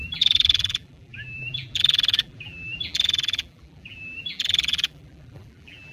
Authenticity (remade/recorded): remade